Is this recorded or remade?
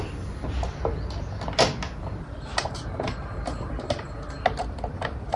recorded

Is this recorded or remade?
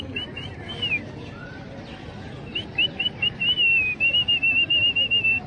recorded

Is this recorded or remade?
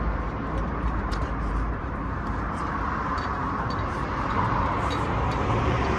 remade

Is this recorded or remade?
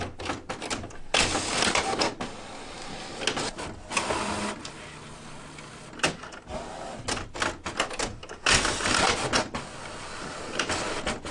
recorded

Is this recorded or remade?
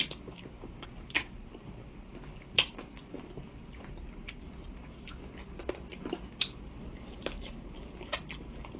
recorded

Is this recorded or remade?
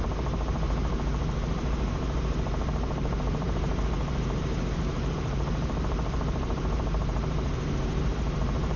remade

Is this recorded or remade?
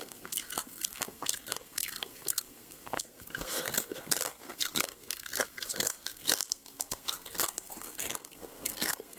remade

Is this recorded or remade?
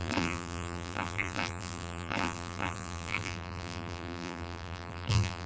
remade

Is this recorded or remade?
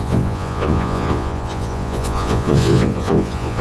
remade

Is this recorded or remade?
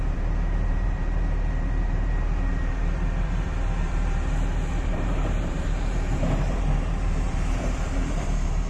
remade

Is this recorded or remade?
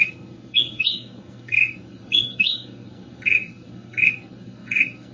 remade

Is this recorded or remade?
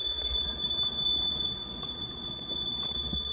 remade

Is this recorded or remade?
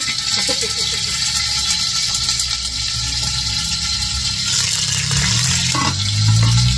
recorded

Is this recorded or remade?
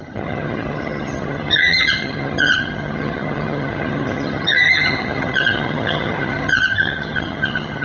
remade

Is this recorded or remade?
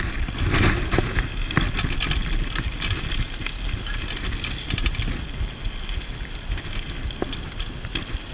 recorded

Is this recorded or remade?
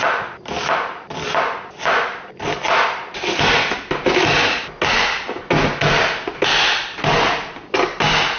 recorded